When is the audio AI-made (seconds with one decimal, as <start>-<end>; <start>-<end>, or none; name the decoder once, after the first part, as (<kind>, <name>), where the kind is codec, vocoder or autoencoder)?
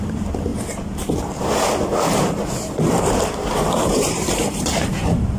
0.0-0.5 (vocoder, BigVGAN v2); 3.0-5.4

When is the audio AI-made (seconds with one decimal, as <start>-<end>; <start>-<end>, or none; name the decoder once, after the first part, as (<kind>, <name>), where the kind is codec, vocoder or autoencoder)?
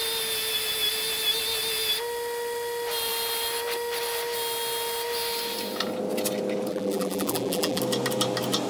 6.7-7.8 (vocoder, BigVGAN v2)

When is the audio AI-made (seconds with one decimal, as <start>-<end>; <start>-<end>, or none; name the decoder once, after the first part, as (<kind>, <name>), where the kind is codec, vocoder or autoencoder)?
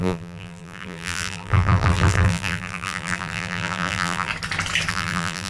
0.0-4.3 (vocoder, BigVGAN v2); 4.9-5.5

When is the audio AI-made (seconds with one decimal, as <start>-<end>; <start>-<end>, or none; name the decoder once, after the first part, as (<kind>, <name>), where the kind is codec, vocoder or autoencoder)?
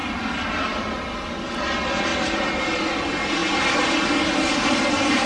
2.1-2.8 (vocoder, BigVGAN v2); 3.4-4.0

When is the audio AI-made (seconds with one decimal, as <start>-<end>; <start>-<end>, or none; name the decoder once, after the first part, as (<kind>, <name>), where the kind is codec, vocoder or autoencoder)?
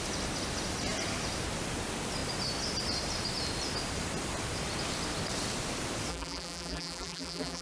6.1-7.6 (vocoder, BigVGAN v2)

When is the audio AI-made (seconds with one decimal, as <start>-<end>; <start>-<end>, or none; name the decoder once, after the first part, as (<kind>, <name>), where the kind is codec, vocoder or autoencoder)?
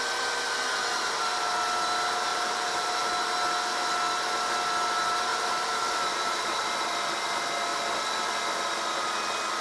2.3-3.0 (vocoder, BigVGAN v2); 5.3-6.7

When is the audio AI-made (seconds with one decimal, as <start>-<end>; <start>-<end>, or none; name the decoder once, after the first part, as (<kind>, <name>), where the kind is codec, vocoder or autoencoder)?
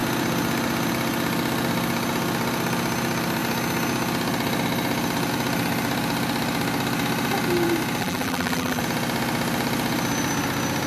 8.0-8.8 (vocoder, BigVGAN v2)